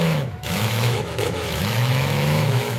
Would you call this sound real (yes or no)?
no